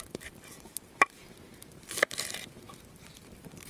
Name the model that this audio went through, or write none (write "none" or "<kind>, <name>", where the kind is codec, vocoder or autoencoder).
vocoder, BigVGAN v2